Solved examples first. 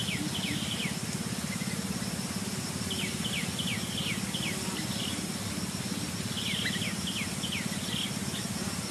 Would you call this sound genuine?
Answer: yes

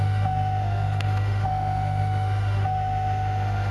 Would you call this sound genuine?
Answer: no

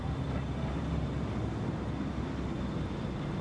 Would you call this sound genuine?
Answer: yes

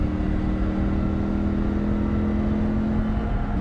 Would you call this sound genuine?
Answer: yes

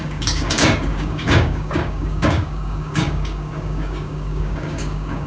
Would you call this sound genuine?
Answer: no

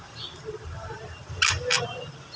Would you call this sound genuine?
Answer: yes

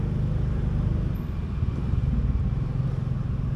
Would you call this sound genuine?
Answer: yes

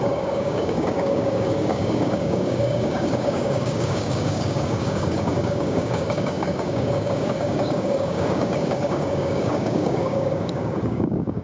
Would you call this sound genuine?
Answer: no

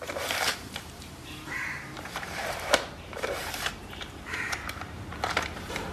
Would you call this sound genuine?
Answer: no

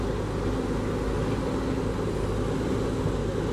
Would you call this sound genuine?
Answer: yes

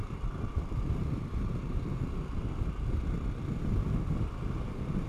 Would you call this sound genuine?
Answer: yes